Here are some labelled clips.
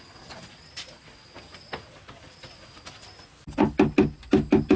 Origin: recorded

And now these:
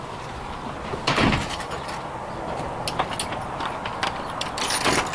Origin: recorded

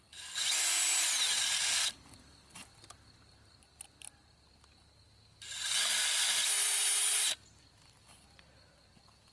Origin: recorded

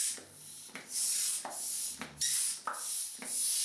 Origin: recorded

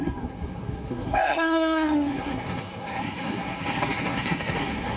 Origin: remade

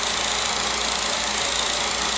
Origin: remade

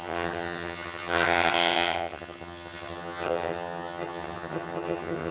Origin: remade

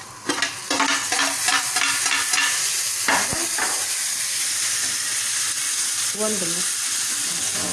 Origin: recorded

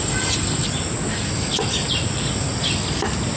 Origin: recorded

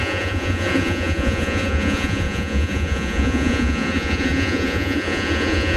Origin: remade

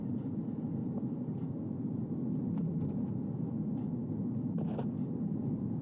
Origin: recorded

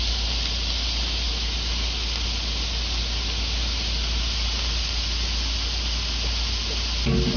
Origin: recorded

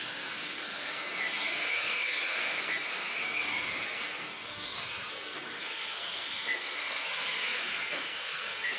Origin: remade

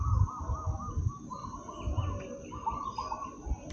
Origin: recorded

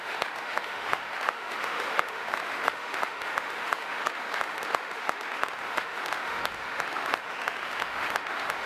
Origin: remade